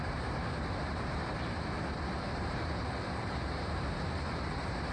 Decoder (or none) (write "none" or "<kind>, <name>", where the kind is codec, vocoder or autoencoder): vocoder, BigVGAN v2